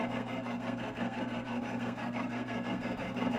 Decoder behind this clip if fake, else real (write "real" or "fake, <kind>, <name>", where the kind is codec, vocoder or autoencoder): fake, codec, SNAC